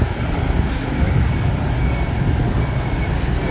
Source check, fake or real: real